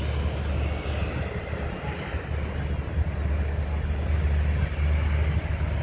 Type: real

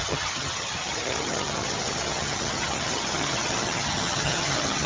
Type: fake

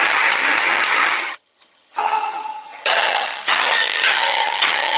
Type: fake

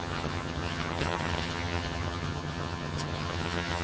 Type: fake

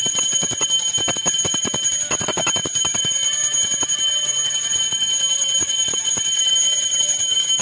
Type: real